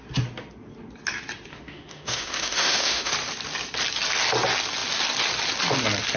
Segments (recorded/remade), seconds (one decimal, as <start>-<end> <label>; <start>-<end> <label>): 0.0-1.5 recorded; 1.5-3.1 remade; 3.1-6.2 recorded

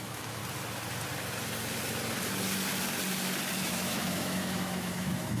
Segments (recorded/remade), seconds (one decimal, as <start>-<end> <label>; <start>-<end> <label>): 0.0-0.4 remade; 0.4-3.6 recorded; 3.6-5.4 remade

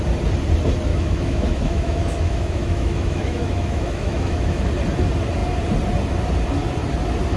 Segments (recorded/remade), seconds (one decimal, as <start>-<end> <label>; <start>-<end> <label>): 0.0-0.9 recorded; 0.9-4.7 remade; 4.7-7.4 recorded

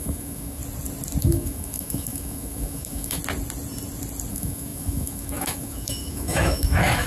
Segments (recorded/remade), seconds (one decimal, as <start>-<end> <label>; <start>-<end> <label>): 0.0-0.6 remade; 0.6-1.2 recorded; 1.2-3.2 remade; 3.2-4.3 recorded; 4.3-7.1 remade

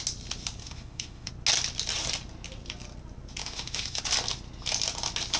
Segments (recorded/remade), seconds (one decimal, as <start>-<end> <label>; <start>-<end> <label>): 0.0-0.6 recorded; 0.6-1.3 remade; 1.3-3.4 recorded; 3.4-4.0 remade; 4.0-5.4 recorded

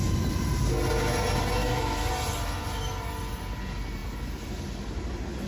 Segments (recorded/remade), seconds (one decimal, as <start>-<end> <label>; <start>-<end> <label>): 0.0-1.6 recorded; 1.6-2.1 remade; 2.1-5.5 recorded

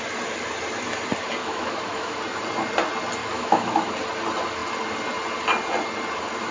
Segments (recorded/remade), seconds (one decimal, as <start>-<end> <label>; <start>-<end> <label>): 0.0-1.4 recorded; 1.4-2.2 remade; 2.2-3.2 recorded; 3.2-3.9 remade; 3.9-6.5 recorded

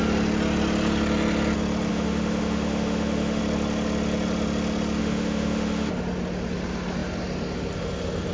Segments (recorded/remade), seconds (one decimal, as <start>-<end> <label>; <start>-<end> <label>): 0.0-1.9 recorded; 1.9-3.4 remade; 3.4-5.0 recorded; 5.0-5.9 remade; 5.9-8.3 recorded